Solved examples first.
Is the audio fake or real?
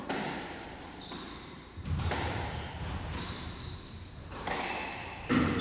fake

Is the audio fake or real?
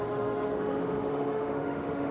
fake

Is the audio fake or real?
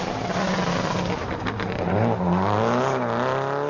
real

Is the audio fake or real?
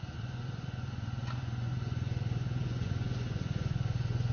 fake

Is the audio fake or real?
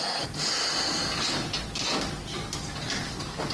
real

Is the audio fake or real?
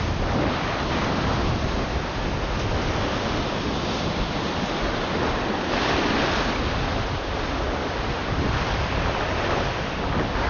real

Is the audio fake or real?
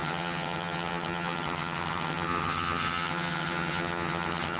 fake